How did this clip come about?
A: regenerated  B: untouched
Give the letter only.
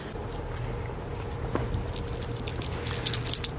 B